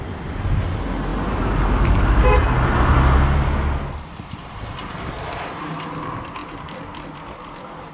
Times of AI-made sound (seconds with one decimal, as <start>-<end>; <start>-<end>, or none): none